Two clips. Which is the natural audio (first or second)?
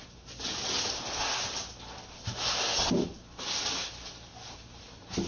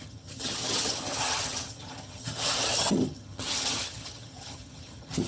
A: first